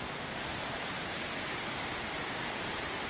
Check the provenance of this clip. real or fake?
fake